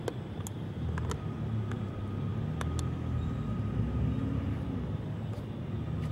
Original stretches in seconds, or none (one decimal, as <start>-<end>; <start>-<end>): 0.0-6.1